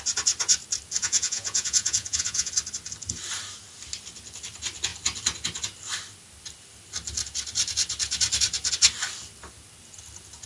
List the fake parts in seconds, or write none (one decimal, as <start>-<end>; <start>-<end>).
1.0-2.5